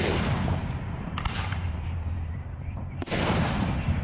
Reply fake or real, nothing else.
fake